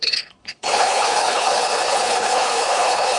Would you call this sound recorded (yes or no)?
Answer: no